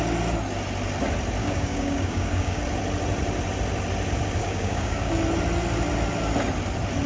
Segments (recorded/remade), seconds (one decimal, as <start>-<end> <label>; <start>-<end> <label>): 0.0-1.4 recorded; 1.4-2.6 remade; 2.6-4.4 recorded; 4.4-5.1 remade; 5.1-7.1 recorded